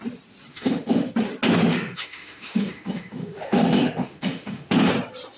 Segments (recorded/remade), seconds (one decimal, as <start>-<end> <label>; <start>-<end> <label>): 0.0-0.5 recorded; 0.5-1.1 remade; 1.1-1.7 recorded; 1.7-4.9 remade; 4.9-5.4 recorded